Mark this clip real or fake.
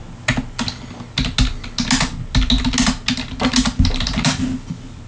real